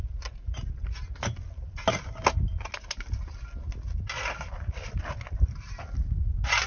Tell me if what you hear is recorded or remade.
recorded